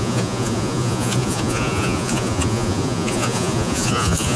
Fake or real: fake